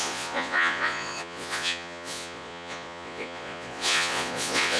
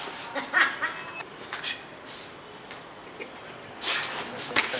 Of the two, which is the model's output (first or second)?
first